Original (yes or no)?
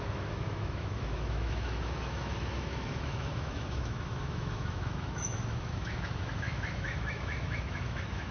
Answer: no